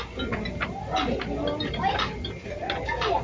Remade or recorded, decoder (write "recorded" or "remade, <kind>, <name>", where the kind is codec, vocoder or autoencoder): recorded